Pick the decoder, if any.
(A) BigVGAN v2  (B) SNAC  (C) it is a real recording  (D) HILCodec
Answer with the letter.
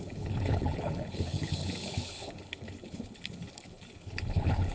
D